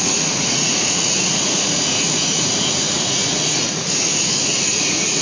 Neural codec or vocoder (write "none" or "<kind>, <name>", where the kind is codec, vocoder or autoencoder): vocoder, Vocos